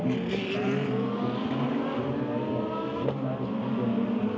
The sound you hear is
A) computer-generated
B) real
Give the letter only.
B